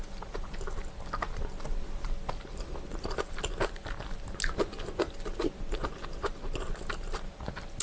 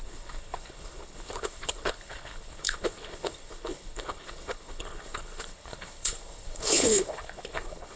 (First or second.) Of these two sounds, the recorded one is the first